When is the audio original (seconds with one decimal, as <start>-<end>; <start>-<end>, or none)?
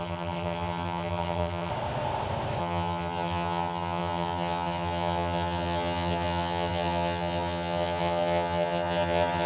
1.7-2.6